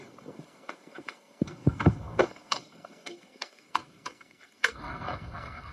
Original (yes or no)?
no